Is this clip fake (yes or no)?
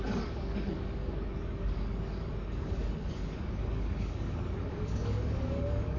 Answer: yes